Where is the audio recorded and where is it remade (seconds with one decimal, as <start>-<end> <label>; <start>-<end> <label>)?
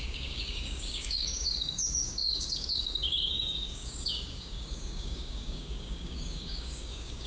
0.0-7.3 remade